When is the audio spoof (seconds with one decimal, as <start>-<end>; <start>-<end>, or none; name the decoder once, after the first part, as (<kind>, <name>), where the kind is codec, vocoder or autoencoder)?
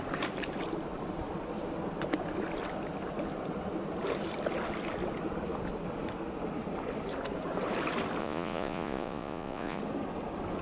8.2-9.8 (vocoder, Vocos)